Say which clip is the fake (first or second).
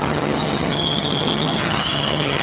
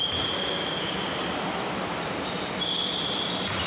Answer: first